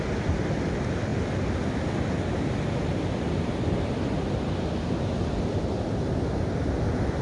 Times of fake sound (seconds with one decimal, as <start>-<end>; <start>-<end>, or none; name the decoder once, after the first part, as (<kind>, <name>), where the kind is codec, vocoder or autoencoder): 0.0-1.1 (vocoder, BigVGAN v2); 5.4-7.2